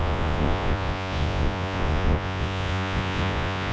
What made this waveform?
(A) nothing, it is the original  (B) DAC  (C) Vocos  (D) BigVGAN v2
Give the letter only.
C